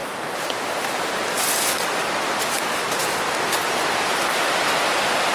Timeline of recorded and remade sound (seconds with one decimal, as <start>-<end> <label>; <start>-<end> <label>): 0.0-5.3 recorded